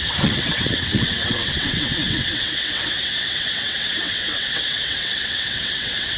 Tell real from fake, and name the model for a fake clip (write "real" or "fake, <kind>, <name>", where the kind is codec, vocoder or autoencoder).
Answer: fake, vocoder, WaveNeXt